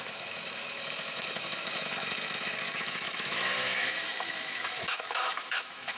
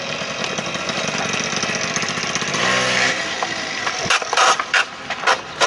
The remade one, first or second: first